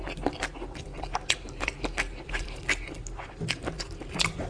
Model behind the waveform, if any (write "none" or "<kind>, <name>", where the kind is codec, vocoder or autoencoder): none